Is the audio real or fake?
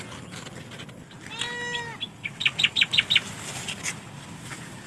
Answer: real